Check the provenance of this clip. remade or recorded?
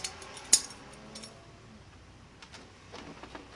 recorded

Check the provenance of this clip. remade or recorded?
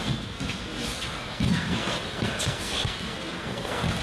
remade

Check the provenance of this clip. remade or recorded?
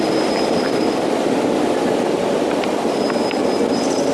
recorded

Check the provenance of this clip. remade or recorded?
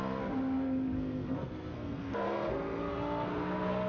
remade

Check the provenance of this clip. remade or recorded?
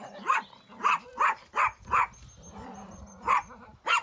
recorded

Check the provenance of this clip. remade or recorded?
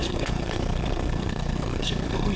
remade